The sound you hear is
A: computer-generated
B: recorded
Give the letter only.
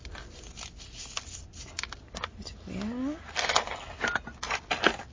B